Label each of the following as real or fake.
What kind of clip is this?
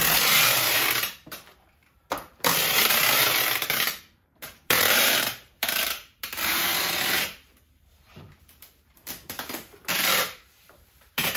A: fake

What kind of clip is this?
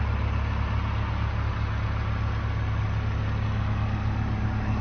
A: real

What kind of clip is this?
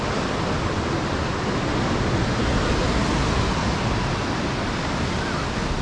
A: real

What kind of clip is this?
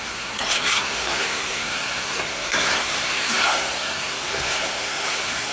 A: fake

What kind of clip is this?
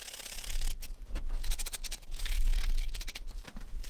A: fake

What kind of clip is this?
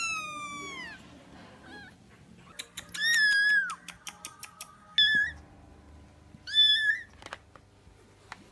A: real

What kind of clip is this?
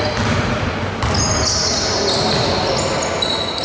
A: real